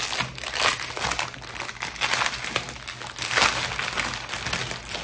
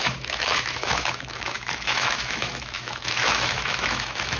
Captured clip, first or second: first